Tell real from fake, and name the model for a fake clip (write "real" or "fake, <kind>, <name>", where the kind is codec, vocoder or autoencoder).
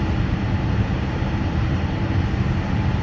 fake, vocoder, BigVGAN v2